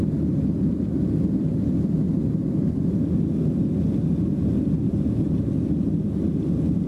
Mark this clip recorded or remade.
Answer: recorded